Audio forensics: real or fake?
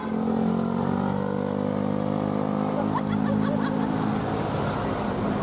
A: real